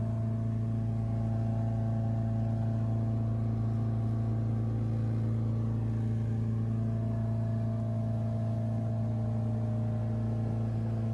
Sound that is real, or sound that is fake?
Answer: real